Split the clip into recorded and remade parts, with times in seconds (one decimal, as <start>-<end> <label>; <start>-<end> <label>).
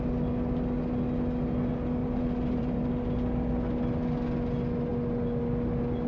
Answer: 0.0-2.0 recorded; 2.0-2.9 remade; 2.9-6.1 recorded